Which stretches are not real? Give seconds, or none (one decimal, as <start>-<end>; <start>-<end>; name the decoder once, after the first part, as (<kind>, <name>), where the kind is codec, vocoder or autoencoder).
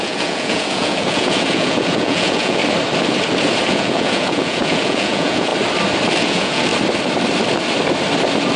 0.0-2.6 (vocoder, Vocos); 3.7-5.5; 6.2-6.7